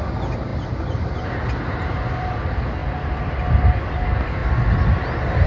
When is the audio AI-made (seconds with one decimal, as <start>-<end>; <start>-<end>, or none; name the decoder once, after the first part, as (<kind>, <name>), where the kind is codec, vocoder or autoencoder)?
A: none